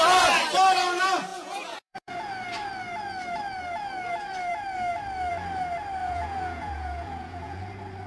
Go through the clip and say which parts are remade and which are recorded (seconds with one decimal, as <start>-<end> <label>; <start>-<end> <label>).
0.0-1.3 recorded; 1.3-2.3 remade; 2.3-6.0 recorded; 6.0-7.6 remade; 7.6-8.1 recorded